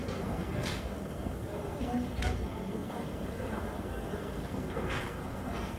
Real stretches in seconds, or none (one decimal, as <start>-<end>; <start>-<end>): none